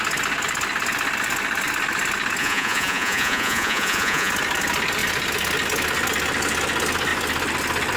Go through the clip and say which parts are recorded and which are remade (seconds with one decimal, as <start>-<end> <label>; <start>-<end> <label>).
0.0-2.4 recorded; 2.4-4.3 remade; 4.3-8.0 recorded